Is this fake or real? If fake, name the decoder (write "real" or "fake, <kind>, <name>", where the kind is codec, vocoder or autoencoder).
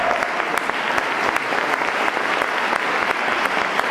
real